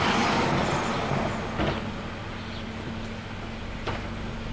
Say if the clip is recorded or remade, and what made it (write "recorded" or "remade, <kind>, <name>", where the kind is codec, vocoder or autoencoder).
recorded